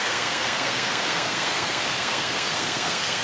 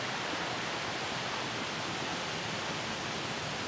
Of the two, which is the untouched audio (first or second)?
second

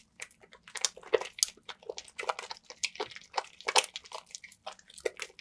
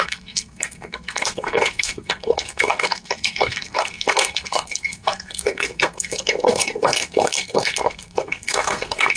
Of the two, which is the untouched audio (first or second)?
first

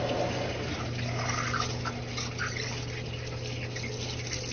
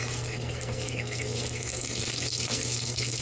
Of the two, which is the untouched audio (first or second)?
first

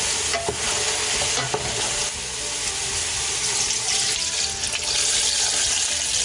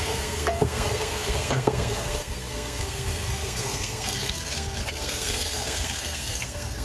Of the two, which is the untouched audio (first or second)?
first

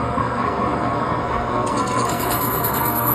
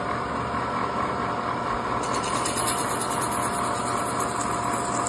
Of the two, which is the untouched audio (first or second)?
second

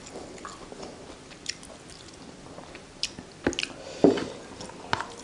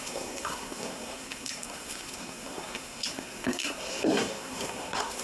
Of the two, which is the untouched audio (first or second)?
first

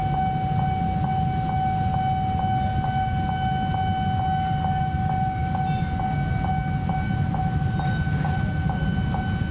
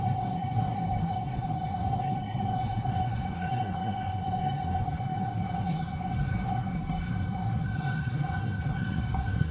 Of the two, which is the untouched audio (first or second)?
first